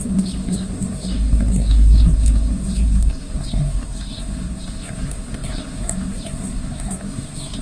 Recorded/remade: remade